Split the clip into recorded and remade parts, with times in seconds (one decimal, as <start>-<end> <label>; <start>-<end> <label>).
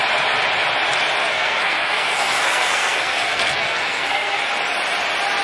0.0-1.2 recorded; 1.2-4.4 remade; 4.4-5.4 recorded